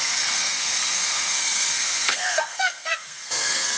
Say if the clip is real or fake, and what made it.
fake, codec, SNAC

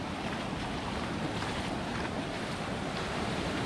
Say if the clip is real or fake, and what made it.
fake, vocoder, BigVGAN v2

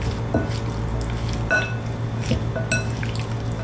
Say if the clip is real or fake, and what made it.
real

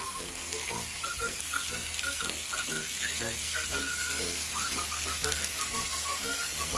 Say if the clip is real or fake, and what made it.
fake, codec, SNAC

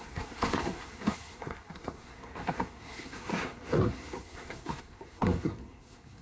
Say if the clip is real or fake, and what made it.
fake, codec, SNAC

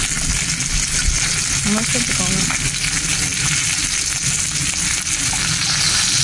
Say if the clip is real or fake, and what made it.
real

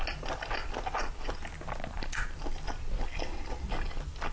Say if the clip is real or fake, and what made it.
real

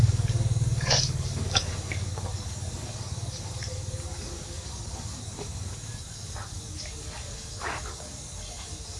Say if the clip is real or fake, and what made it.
fake, codec, DAC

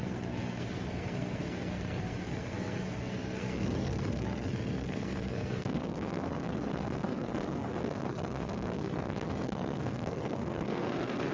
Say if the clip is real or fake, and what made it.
fake, codec, SNAC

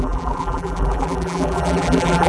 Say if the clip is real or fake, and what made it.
fake, vocoder, BigVGAN v2